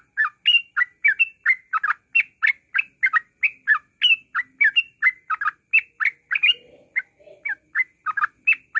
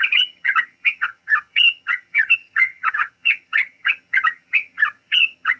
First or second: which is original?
first